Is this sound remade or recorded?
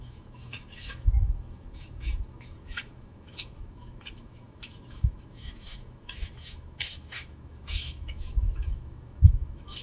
remade